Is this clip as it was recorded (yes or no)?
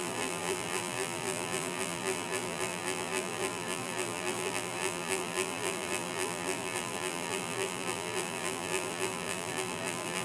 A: no